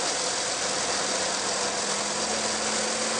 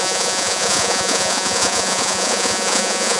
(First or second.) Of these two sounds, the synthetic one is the second